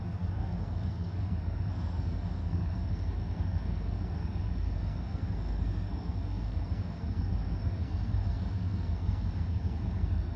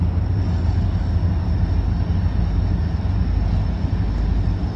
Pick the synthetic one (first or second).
first